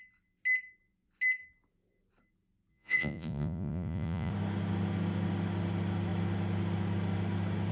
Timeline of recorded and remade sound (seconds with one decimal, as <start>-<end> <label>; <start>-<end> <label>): 0.0-2.7 recorded; 2.7-4.3 remade; 4.3-7.7 recorded